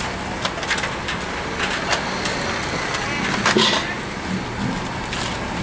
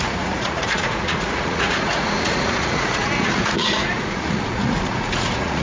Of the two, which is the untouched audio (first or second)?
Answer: first